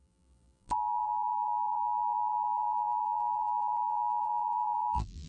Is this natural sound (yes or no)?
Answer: no